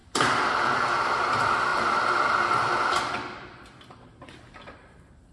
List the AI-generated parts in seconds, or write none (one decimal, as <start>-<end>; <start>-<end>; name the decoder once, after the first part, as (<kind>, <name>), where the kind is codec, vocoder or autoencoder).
0.0-0.8 (vocoder, BigVGAN v2); 1.7-5.3